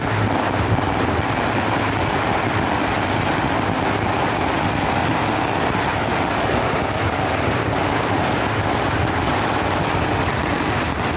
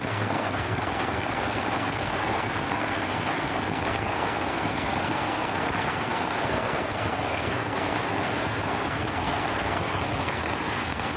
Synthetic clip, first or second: second